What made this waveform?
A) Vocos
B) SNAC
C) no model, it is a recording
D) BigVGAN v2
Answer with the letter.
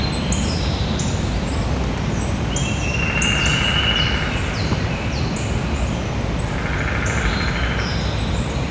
C